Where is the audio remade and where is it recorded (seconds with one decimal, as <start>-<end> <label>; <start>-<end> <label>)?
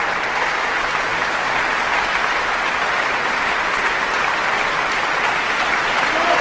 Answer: 0.0-6.4 recorded